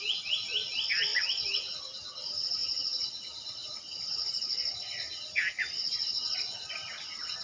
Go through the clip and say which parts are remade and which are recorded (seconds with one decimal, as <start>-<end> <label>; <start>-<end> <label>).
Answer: 0.0-7.4 recorded